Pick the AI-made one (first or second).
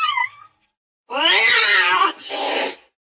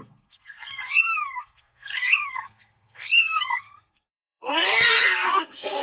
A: second